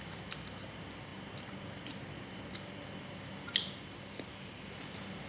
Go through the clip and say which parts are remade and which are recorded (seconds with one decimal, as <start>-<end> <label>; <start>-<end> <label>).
0.0-5.3 recorded